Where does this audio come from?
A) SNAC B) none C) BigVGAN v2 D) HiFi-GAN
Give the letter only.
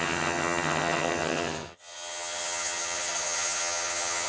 D